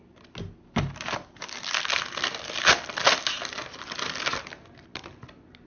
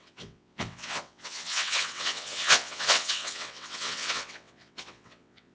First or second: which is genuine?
first